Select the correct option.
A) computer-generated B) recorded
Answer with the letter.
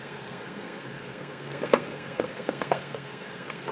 A